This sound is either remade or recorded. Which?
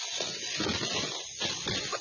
recorded